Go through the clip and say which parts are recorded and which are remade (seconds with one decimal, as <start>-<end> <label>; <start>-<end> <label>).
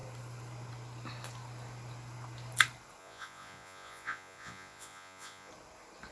0.0-3.0 recorded; 3.0-5.5 remade; 5.5-6.1 recorded